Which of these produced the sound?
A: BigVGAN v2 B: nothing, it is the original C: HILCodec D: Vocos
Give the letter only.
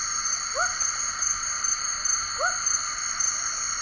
B